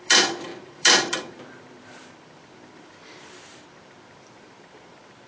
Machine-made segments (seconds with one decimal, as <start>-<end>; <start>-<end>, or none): 0.0-5.3